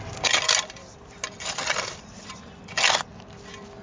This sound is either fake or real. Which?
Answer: real